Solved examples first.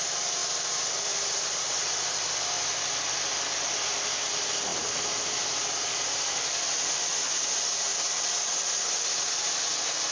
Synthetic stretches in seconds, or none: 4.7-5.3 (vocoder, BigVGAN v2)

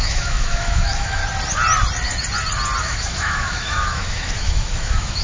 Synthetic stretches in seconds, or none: 0.0-1.2 (autoencoder, DAC-VAE); 2.8-5.2

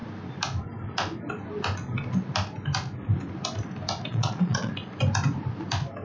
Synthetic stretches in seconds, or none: 4.1-4.7 (vocoder, Vocos)